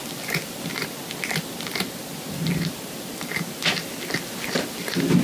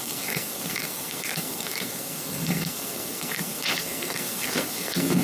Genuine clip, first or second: first